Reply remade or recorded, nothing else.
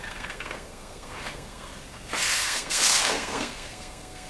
remade